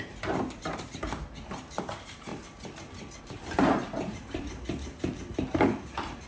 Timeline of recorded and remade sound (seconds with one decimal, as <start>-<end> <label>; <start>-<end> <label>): 0.0-2.3 remade; 2.3-3.2 recorded; 3.2-6.3 remade